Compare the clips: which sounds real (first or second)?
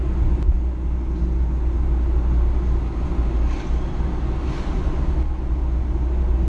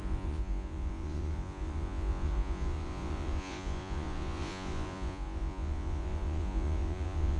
first